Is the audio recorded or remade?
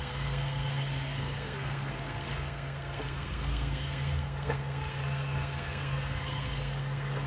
remade